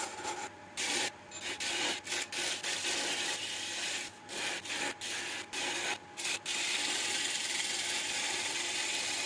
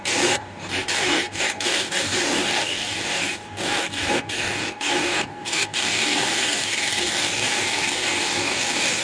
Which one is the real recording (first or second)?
first